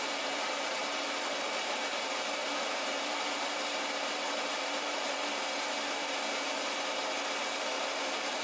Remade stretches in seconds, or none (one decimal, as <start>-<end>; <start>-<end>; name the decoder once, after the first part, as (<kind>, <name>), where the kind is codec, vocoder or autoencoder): 0.0-0.8 (vocoder, BigVGAN v2); 1.6-5.3; 7.4-8.4